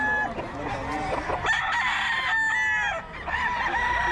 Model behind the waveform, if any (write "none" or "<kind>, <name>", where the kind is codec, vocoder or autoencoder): none